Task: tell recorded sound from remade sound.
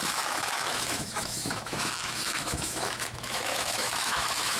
remade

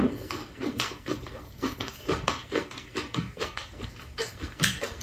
remade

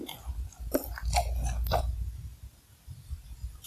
recorded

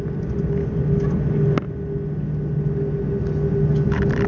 recorded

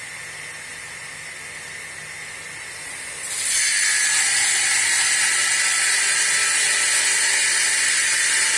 recorded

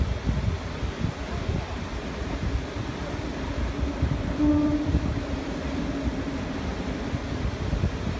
recorded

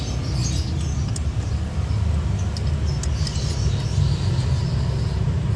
recorded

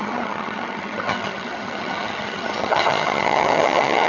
remade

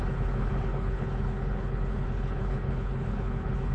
remade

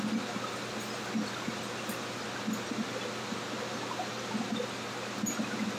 recorded